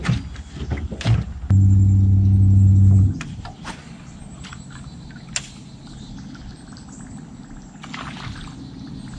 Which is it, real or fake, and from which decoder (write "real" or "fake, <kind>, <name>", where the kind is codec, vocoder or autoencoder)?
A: real